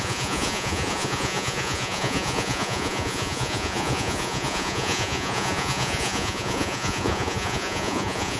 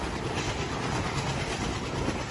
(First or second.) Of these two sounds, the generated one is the first